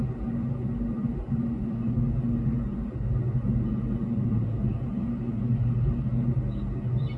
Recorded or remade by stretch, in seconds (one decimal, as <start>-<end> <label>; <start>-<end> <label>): 0.0-7.2 recorded